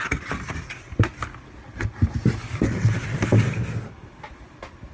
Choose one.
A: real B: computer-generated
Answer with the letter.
A